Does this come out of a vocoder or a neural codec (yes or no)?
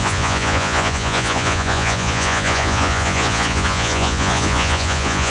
yes